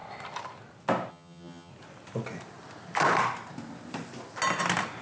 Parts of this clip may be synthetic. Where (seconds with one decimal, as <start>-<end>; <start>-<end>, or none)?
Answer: 1.1-1.7